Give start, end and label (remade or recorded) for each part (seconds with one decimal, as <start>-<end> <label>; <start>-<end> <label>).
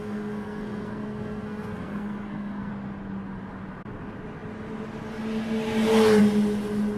0.0-2.7 remade; 2.7-7.0 recorded